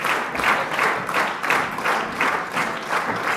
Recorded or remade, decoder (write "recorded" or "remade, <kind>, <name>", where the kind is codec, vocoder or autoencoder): recorded